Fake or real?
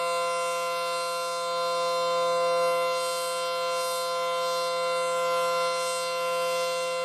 real